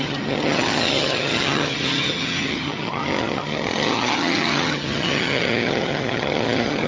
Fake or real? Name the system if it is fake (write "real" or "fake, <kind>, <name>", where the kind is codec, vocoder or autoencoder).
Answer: fake, vocoder, HiFi-GAN